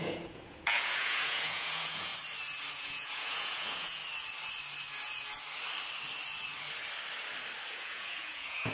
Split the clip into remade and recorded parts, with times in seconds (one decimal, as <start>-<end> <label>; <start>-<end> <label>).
0.0-2.1 remade; 2.1-2.7 recorded; 2.7-4.0 remade; 4.0-7.7 recorded; 7.7-8.7 remade